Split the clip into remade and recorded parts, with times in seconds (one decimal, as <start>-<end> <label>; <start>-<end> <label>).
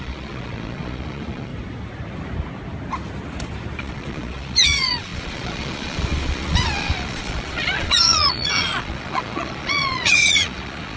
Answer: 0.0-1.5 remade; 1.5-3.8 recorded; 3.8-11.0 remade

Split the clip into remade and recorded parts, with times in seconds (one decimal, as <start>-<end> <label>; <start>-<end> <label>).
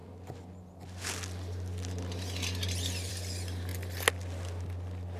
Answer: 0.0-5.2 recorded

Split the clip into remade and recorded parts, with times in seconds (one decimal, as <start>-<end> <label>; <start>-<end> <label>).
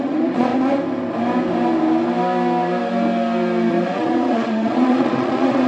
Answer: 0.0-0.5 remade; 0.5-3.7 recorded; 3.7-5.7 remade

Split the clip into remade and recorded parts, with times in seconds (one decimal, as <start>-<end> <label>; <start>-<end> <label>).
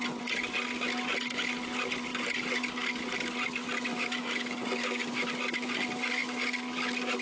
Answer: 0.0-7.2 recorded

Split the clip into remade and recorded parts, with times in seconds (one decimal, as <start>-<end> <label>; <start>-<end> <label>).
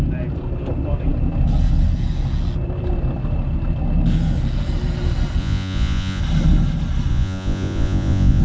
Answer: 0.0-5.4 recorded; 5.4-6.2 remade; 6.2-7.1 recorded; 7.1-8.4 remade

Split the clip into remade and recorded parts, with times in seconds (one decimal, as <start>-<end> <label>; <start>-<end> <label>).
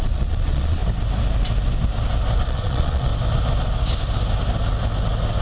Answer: 0.0-0.8 remade; 0.8-2.4 recorded; 2.4-3.1 remade; 3.1-5.4 recorded